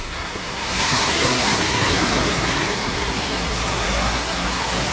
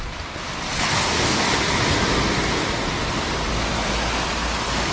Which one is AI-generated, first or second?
first